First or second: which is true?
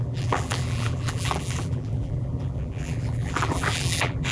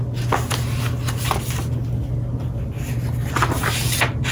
second